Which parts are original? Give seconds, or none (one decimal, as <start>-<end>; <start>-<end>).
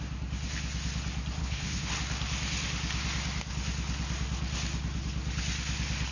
0.0-1.4; 1.9-6.1